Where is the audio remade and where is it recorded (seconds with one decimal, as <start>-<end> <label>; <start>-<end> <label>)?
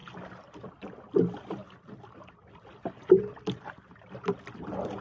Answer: 0.0-5.0 recorded